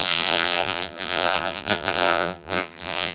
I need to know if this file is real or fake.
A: fake